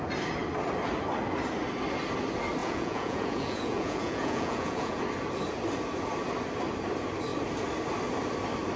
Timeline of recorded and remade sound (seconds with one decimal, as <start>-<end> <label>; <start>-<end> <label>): 0.0-2.6 recorded; 2.6-5.0 remade; 5.0-8.8 recorded